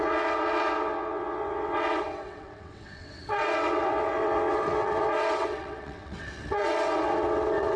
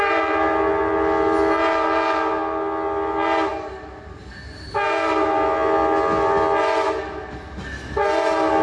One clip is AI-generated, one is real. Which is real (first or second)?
second